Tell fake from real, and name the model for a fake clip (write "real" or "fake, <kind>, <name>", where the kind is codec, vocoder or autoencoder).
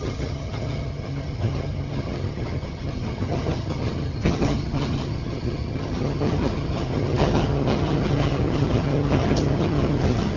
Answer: fake, vocoder, HiFi-GAN